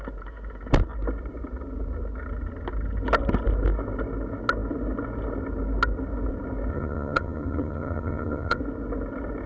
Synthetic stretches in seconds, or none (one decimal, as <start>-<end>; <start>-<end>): 6.7-8.6